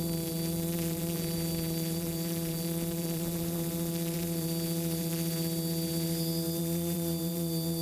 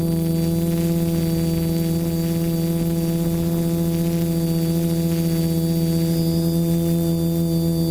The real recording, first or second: second